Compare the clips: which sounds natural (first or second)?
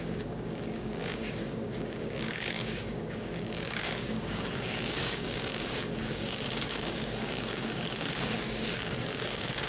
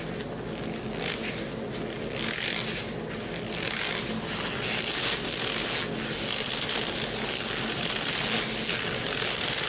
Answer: second